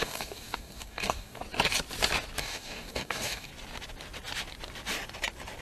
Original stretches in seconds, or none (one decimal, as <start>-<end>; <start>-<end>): 1.4-2.4; 3.5-5.6